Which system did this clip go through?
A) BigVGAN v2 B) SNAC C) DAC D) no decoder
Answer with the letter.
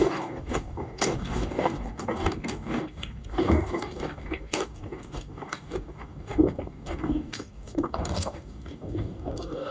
C